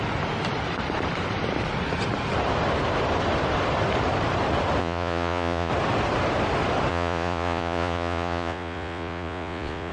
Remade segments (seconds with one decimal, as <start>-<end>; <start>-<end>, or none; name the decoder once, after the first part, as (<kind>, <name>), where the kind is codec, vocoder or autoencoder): 4.8-5.7 (vocoder, Vocos); 6.9-9.9